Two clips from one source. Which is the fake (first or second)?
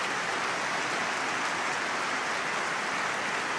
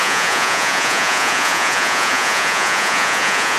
second